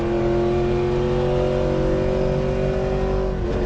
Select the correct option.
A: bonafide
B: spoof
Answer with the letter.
A